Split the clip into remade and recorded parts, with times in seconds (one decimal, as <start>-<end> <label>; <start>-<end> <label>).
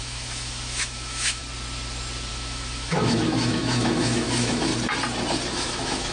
0.0-1.4 remade; 1.4-2.3 recorded; 2.3-4.7 remade; 4.7-5.5 recorded; 5.5-6.1 remade